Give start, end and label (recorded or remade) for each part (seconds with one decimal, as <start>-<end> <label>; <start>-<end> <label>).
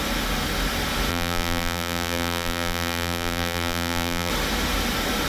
0.0-1.1 recorded; 1.1-4.3 remade; 4.3-5.3 recorded